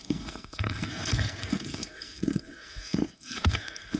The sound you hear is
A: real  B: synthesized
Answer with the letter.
B